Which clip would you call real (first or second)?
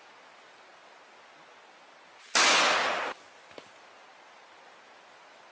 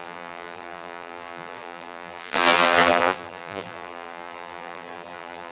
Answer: first